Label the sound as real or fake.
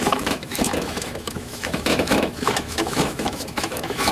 fake